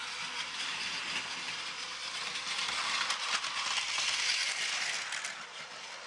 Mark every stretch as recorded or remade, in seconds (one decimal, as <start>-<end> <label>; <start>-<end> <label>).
0.0-6.1 recorded